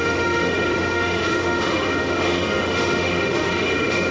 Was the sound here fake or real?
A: fake